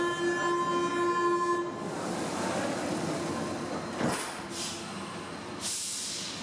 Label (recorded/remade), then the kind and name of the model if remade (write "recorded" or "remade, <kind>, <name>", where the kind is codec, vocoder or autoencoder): recorded